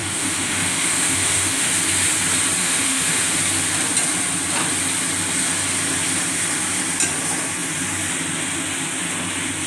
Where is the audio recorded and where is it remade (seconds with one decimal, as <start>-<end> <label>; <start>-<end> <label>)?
0.0-1.7 remade; 1.7-2.6 recorded; 2.6-3.4 remade; 3.4-9.7 recorded